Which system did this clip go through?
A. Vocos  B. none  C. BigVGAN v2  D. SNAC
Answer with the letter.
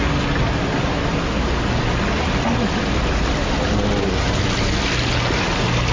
B